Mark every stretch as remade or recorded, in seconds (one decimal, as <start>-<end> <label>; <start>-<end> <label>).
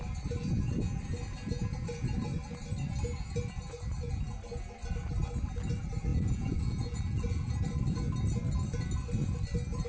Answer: 0.0-6.1 recorded; 6.1-7.5 remade; 7.5-9.9 recorded